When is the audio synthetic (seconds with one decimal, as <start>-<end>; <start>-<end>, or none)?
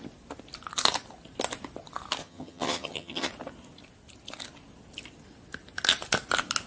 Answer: 2.2-3.3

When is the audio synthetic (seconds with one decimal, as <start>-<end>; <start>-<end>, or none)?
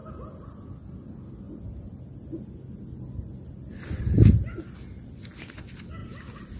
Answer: none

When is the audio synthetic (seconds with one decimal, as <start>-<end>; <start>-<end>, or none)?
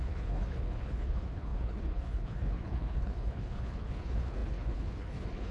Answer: 0.0-5.5